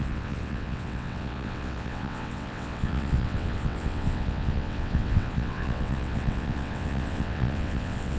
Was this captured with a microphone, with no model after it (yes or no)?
no